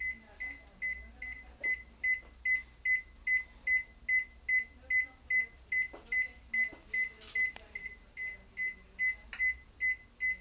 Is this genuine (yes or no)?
yes